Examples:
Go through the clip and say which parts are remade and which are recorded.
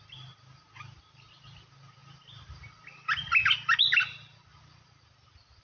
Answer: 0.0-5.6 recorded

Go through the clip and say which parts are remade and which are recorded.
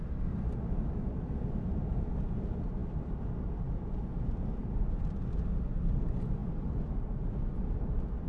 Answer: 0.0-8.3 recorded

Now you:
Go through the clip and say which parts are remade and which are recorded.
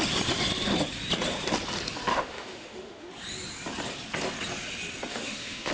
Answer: 0.0-2.1 recorded; 2.1-3.1 remade; 3.1-5.1 recorded; 5.1-5.7 remade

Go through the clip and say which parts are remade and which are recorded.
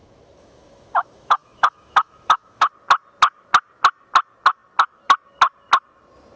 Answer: 0.0-2.7 remade; 2.7-6.4 recorded